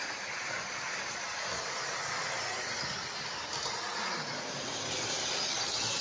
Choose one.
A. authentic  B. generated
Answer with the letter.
A